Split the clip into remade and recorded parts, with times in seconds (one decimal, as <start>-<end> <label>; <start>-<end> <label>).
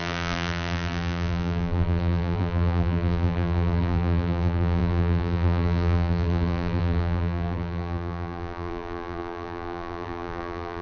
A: 0.0-10.8 remade